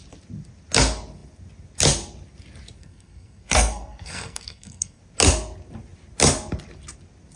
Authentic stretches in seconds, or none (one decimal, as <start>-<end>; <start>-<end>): 0.0-2.8; 5.0-7.4